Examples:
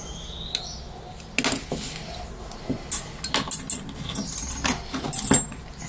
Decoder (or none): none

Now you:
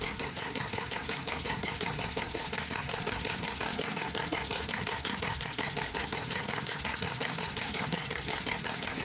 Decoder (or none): codec, SNAC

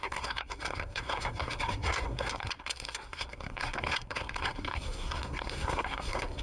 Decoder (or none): codec, SNAC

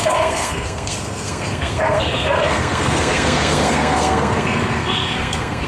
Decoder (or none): codec, SNAC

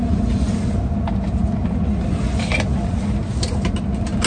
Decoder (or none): none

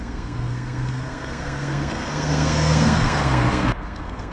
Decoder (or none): codec, SNAC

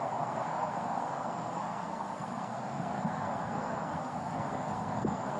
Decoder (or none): codec, SNAC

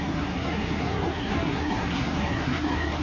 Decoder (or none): codec, SNAC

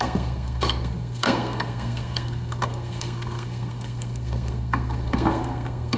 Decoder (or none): codec, SNAC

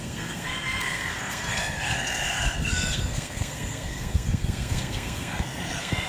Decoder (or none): codec, SNAC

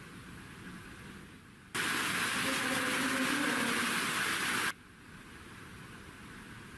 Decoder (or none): none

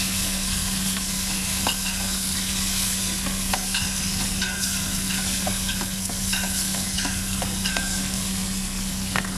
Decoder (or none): codec, SNAC